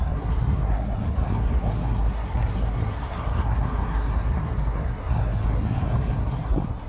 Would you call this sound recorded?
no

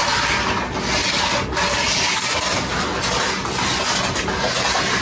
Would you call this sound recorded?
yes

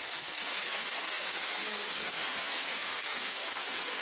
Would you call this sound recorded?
no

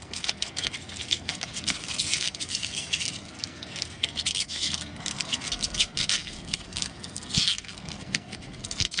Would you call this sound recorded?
no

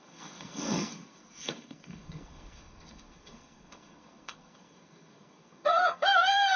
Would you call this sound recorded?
no